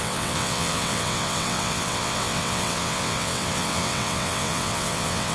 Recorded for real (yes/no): no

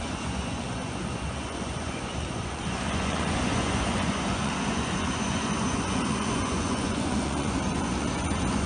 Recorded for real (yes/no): no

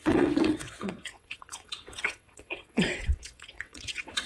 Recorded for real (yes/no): no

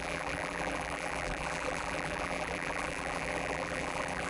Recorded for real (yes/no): no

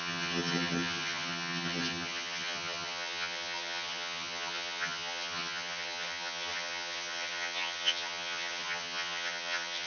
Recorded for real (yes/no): no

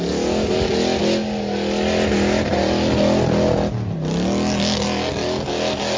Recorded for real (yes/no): yes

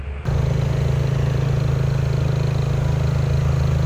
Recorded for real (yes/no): yes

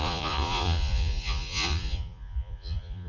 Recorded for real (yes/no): no